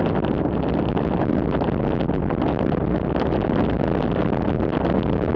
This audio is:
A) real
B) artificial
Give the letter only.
A